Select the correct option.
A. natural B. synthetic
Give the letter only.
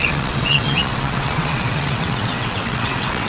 B